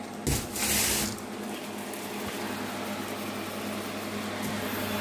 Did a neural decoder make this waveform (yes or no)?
no